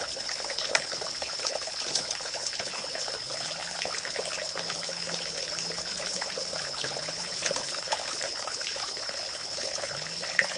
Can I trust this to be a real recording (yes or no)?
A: no